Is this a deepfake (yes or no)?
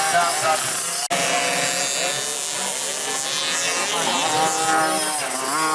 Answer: no